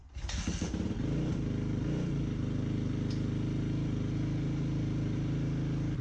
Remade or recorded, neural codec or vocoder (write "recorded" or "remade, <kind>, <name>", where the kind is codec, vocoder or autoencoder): recorded